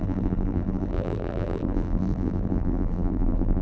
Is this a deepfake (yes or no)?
yes